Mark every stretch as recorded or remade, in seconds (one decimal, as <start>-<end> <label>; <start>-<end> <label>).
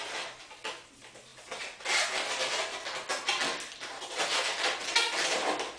0.0-5.8 recorded